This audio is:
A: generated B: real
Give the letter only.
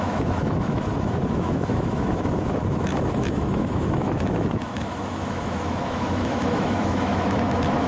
A